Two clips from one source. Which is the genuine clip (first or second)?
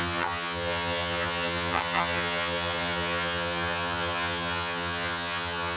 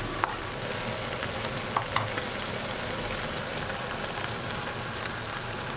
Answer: second